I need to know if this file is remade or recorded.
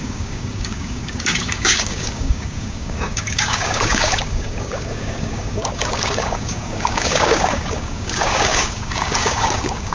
remade